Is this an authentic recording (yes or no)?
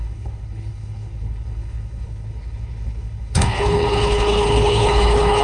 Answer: no